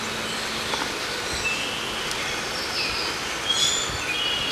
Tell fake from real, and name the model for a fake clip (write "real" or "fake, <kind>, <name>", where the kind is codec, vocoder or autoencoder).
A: real